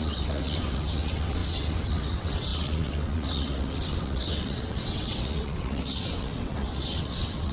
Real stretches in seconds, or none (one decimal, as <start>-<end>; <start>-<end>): none